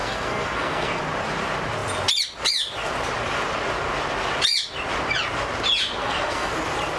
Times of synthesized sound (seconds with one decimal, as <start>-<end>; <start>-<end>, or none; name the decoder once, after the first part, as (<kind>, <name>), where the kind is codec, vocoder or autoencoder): 0.0-1.0 (codec, SNAC); 6.0-6.5